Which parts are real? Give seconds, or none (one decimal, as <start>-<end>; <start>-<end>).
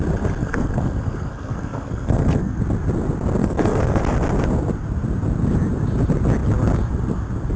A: 0.0-0.4; 2.6-3.4; 4.0-7.6